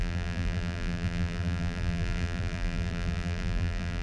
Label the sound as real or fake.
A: fake